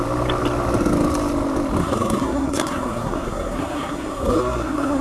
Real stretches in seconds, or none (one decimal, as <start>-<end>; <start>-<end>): 0.0-1.8